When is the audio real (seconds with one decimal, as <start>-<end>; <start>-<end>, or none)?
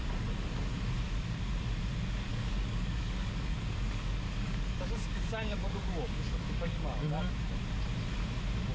0.0-2.3; 7.2-8.7